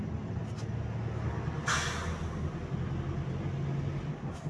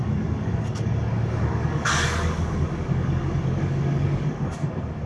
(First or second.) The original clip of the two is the first